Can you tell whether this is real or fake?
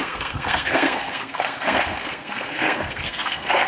fake